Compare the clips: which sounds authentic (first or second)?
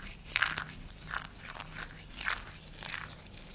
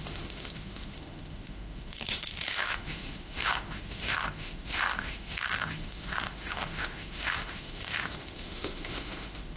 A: first